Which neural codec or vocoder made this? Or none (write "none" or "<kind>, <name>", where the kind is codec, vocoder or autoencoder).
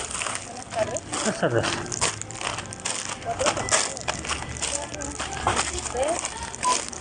none